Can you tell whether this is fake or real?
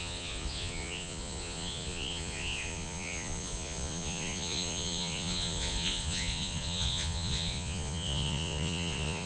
fake